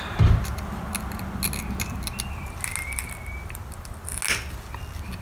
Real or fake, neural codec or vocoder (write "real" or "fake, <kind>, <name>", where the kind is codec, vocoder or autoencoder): real